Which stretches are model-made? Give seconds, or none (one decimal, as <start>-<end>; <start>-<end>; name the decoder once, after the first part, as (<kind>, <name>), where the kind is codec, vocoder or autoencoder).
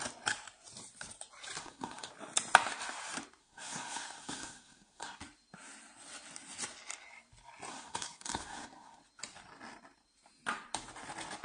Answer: 1.6-2.1 (codec, SNAC); 3.4-5.2; 7.7-9.0